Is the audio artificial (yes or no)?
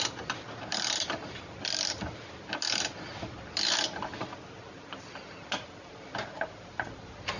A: no